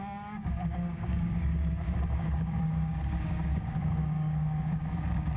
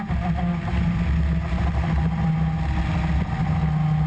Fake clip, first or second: first